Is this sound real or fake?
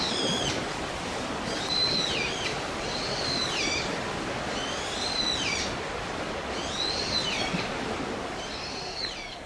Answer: fake